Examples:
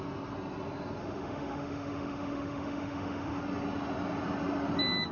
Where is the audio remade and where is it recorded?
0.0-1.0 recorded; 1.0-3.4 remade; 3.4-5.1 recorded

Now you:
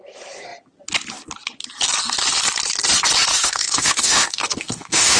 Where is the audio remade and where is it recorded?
0.0-3.3 recorded; 3.3-5.2 remade

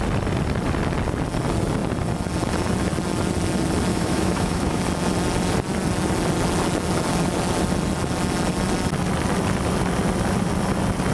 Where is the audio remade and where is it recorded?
0.0-3.9 recorded; 3.9-4.8 remade; 4.8-11.1 recorded